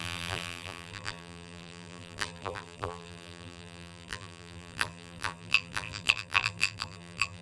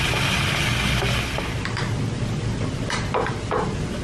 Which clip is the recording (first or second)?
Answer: second